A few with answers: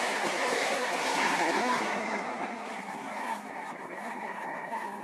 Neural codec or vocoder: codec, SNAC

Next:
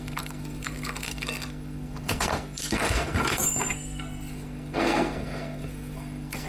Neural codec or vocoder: codec, SNAC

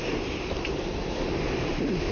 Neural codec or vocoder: none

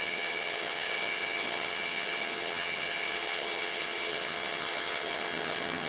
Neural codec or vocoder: vocoder, HiFi-GAN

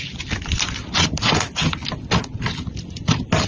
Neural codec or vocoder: none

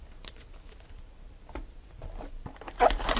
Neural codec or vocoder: vocoder, BigVGAN v2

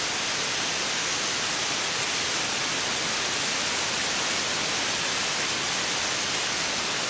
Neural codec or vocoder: none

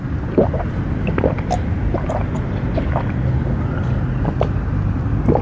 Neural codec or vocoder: none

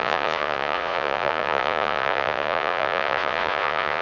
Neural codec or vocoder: vocoder, Vocos